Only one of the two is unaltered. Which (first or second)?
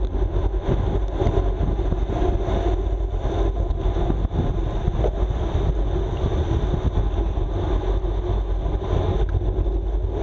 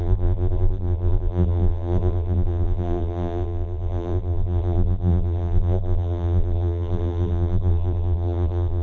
first